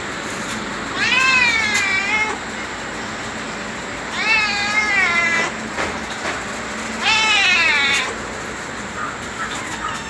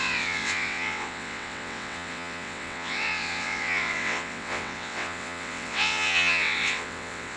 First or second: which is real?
first